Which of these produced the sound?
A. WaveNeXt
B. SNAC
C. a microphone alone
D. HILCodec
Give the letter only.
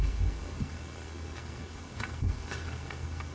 B